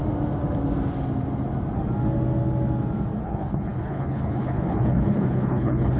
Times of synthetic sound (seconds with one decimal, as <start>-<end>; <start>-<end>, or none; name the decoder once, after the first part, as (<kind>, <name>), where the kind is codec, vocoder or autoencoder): 3.2-6.0 (codec, HILCodec)